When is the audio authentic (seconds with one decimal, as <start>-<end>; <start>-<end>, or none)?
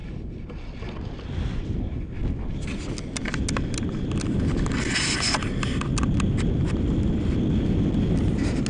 0.0-8.7